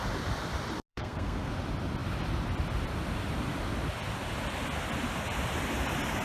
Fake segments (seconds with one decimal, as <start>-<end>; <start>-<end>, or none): 0.9-1.5

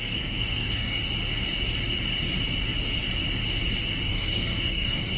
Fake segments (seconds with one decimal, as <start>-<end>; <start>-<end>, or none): 0.0-1.0; 4.1-5.2

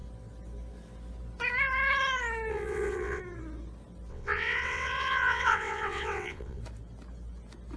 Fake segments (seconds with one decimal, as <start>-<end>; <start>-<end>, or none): 2.5-3.2; 4.1-6.6

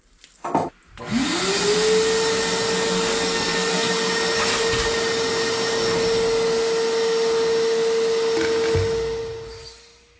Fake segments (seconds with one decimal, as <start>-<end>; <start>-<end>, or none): 3.1-3.9

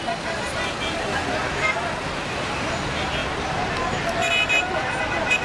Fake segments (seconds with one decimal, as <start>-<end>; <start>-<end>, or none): none

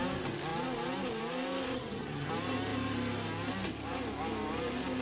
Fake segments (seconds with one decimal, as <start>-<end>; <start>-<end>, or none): 1.7-2.3

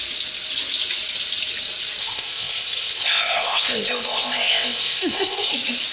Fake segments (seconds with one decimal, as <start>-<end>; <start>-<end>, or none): 2.0-5.5